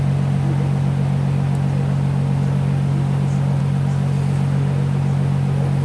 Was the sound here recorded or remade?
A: recorded